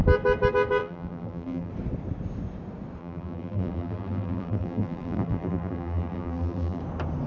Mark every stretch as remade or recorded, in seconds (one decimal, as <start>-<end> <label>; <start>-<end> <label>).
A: 0.0-0.8 recorded; 0.8-1.7 remade; 1.7-3.0 recorded; 3.0-6.8 remade; 6.8-7.3 recorded